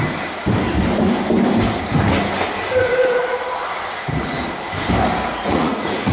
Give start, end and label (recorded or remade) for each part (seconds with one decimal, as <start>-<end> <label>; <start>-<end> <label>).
0.0-5.3 recorded; 5.3-6.1 remade